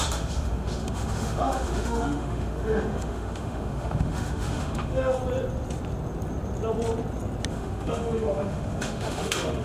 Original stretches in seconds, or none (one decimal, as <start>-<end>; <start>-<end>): 5.2-7.5